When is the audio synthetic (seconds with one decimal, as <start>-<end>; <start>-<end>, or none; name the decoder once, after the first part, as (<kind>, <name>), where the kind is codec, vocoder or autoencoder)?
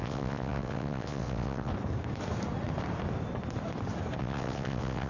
0.0-1.7 (vocoder, WaveNeXt); 4.2-5.1